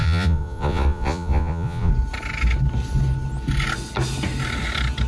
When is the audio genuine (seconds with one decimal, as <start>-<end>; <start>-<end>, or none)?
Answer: 1.9-5.1